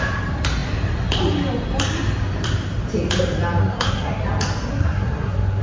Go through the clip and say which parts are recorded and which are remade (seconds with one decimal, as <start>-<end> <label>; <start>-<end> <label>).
0.0-3.6 recorded; 3.6-4.2 remade; 4.2-4.7 recorded; 4.7-5.6 remade